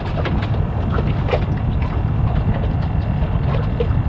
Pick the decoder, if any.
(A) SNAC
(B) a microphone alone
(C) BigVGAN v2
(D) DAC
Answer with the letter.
B